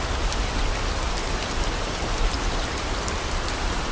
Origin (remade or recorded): recorded